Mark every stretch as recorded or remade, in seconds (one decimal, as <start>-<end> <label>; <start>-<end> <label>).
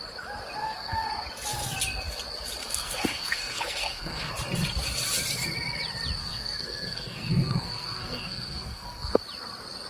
0.0-0.6 recorded; 0.6-1.1 remade; 1.1-2.6 recorded; 2.6-4.3 remade; 4.3-6.2 recorded; 6.2-9.2 remade; 9.2-9.9 recorded